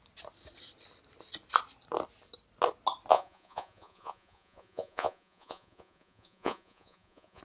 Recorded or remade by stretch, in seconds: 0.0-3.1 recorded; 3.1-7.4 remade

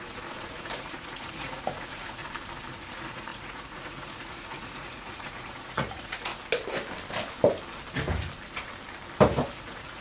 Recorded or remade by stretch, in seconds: 0.0-2.2 remade; 2.2-2.7 recorded; 2.7-6.3 remade; 6.3-9.6 recorded; 9.6-10.0 remade

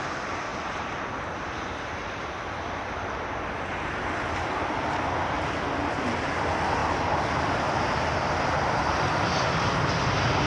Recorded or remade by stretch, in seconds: 0.0-10.5 recorded